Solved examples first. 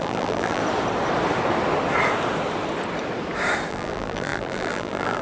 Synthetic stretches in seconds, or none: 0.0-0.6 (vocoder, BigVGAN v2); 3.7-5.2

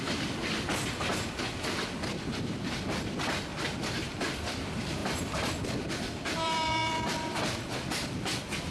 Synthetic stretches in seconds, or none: 0.0-0.4 (vocoder, BigVGAN v2); 1.1-3.5; 4.4-8.7